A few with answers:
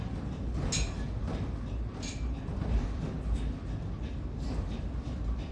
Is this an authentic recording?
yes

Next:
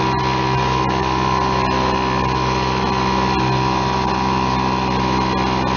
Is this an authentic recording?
yes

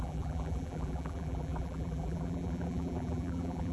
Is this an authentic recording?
no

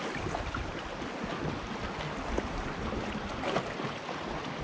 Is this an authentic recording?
yes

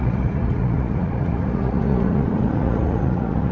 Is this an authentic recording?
no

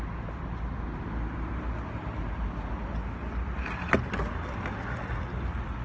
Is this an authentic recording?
yes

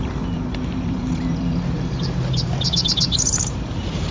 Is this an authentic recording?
no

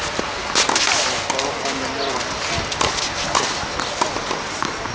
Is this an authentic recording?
yes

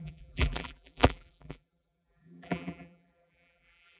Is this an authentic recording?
no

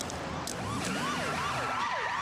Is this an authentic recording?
yes